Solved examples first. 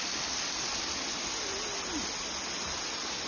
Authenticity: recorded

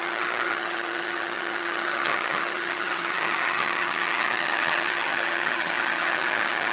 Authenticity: remade